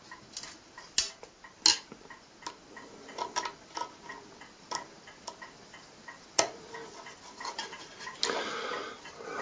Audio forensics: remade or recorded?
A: recorded